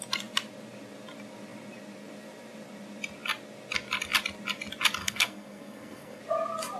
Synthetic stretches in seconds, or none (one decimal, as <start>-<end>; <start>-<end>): 5.0-6.2